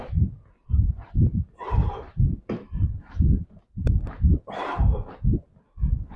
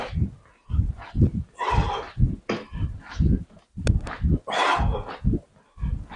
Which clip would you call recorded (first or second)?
second